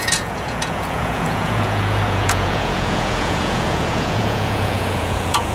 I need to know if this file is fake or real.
fake